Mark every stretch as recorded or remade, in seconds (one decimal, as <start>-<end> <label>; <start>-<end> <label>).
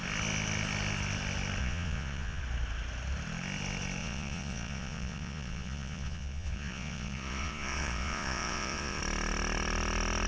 0.0-1.6 recorded; 1.6-2.4 remade; 2.4-4.0 recorded; 4.0-9.0 remade; 9.0-10.3 recorded